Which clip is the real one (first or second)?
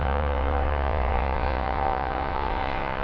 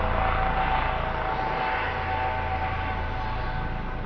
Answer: second